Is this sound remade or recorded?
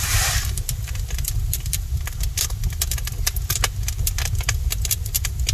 recorded